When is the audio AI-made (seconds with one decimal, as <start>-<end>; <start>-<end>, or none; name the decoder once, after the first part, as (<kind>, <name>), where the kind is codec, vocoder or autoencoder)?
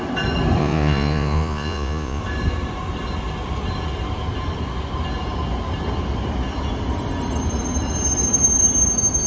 0.6-2.2 (vocoder, Vocos)